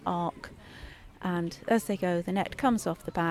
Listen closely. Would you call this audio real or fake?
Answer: real